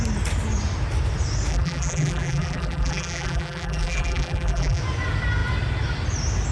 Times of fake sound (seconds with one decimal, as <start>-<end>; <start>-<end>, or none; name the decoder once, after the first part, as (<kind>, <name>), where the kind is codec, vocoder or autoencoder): 1.5-4.8 (vocoder, BigVGAN v2)